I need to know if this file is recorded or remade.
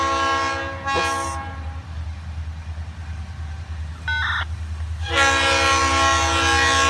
recorded